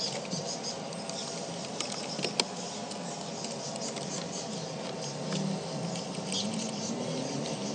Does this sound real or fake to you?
real